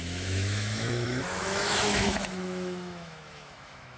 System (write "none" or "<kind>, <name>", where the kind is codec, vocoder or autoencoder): autoencoder, DAC-VAE